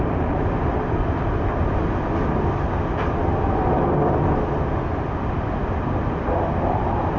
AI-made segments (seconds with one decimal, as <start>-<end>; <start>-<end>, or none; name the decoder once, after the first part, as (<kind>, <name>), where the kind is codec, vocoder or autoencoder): none